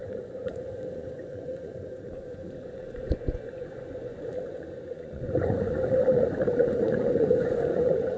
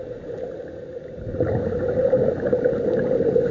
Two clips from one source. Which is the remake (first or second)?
first